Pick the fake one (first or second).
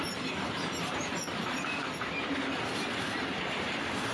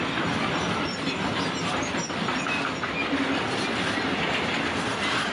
first